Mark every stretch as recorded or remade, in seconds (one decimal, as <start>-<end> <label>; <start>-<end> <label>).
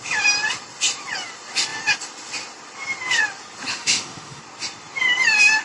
0.0-3.7 recorded; 3.7-4.4 remade; 4.4-5.6 recorded